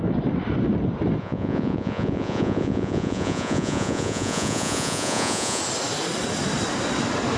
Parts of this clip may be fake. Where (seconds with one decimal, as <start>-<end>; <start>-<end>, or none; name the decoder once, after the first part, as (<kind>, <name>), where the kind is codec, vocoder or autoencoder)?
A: 1.2-5.6 (vocoder, Vocos)